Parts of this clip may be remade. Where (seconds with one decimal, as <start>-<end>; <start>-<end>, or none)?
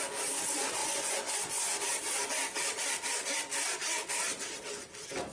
0.8-1.8